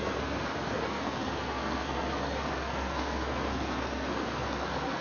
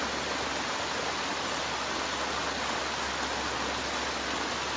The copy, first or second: first